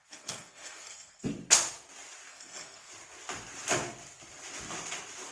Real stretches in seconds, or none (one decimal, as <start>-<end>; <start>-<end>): 1.3-2.3; 2.9-5.3